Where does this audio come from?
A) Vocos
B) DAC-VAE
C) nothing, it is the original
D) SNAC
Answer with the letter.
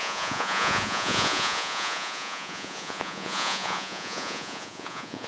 A